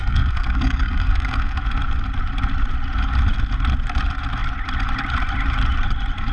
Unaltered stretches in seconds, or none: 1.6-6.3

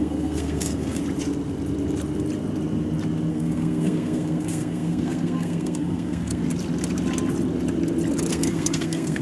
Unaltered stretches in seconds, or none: 1.0-3.3; 6.4-8.3

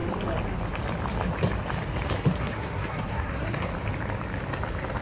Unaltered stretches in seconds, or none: 0.0-2.4; 3.7-5.0